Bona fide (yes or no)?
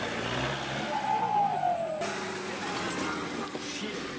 yes